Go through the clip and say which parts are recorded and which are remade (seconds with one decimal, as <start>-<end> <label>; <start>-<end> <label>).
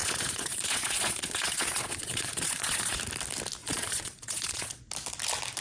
0.0-3.0 remade; 3.0-3.6 recorded; 3.6-4.8 remade; 4.8-5.6 recorded